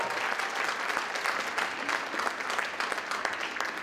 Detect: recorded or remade recorded